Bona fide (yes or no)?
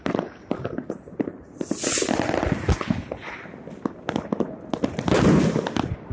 yes